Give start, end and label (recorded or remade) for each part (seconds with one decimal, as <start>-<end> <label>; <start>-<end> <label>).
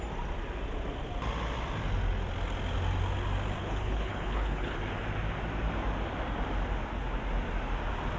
0.0-3.6 recorded; 3.6-4.8 remade; 4.8-8.2 recorded